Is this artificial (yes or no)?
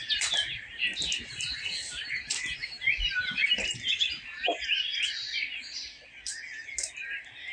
no